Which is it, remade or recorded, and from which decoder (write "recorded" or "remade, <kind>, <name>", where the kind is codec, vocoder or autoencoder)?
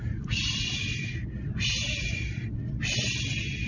recorded